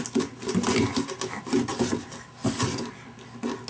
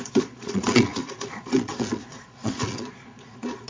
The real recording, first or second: first